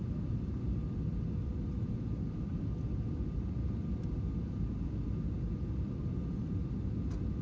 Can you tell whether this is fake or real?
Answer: real